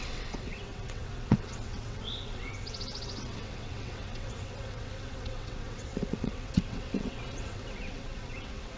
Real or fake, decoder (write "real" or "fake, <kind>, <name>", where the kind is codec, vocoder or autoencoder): fake, vocoder, WaveNeXt